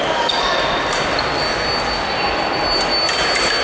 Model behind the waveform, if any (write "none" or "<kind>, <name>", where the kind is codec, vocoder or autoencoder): none